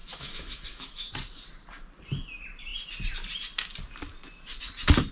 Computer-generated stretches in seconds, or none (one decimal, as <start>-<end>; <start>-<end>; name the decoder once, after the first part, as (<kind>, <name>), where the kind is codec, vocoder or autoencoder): 0.0-1.1 (autoencoder, DAC-VAE)